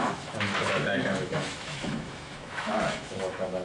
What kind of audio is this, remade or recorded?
remade